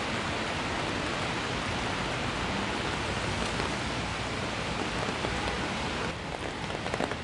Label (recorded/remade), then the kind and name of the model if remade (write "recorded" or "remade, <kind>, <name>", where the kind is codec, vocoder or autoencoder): recorded